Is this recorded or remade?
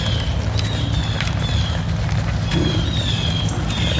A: recorded